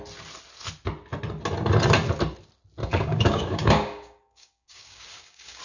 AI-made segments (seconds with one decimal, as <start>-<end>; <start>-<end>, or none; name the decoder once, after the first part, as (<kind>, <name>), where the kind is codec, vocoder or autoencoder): 2.8-5.6 (codec, DAC)